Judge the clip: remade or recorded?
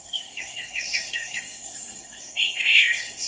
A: remade